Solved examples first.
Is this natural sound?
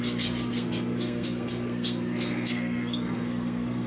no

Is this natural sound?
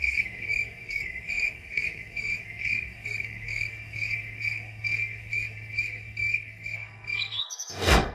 no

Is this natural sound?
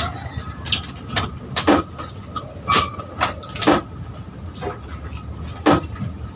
yes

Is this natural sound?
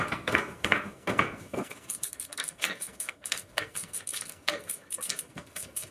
no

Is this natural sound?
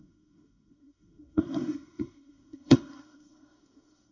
no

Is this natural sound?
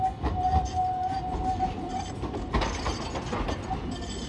yes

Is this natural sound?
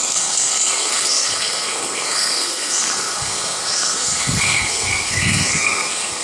no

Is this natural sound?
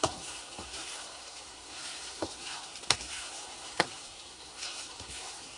no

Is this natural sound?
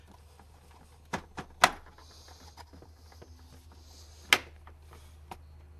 yes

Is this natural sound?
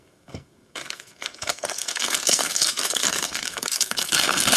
no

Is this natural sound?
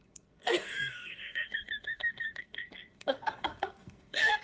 no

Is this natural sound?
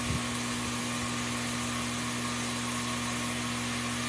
yes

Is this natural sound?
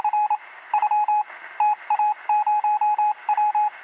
yes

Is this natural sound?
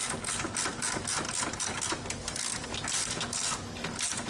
yes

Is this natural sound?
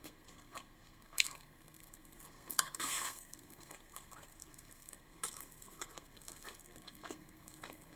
no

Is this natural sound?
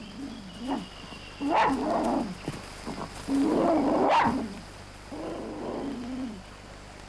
yes